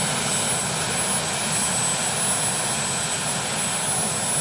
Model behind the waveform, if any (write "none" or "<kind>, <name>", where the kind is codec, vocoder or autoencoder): none